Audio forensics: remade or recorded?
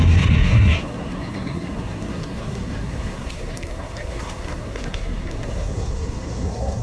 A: remade